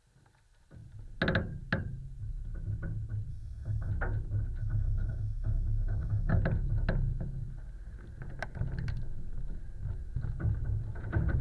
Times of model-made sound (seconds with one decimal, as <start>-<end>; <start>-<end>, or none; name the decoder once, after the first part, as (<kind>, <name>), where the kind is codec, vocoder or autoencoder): 3.3-3.9 (codec, SNAC); 4.6-6.4

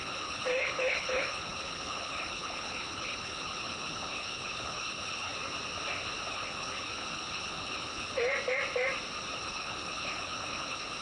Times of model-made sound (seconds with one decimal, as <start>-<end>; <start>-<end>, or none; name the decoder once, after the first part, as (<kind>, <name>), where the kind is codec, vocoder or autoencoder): 0.0-5.3 (codec, HILCodec); 6.3-8.3; 9.4-11.0

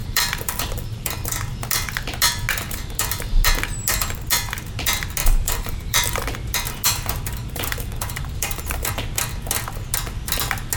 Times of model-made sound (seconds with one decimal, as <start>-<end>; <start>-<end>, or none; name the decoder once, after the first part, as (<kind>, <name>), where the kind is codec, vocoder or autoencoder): 0.0-1.1 (vocoder, BigVGAN v2); 5.2-6.1; 7.4-9.0

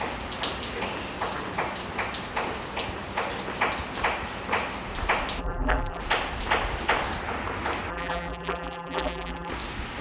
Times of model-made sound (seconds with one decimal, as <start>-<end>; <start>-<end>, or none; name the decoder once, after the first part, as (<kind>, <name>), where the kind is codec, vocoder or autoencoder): 5.4-6.0 (vocoder, BigVGAN v2); 7.9-9.5

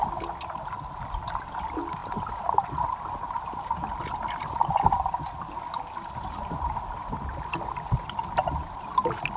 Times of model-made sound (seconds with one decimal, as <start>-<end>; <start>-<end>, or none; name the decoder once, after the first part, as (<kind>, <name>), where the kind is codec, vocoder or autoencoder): none

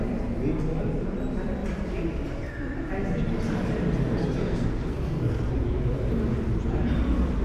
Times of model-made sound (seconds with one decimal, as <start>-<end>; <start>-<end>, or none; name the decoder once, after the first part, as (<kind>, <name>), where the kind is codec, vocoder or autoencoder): 4.2-5.5 (codec, SNAC)